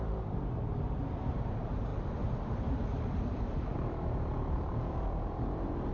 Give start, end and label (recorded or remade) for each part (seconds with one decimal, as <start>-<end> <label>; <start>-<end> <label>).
0.0-5.9 remade